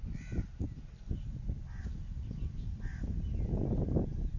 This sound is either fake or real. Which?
real